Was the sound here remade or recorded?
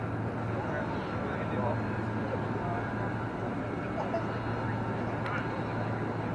recorded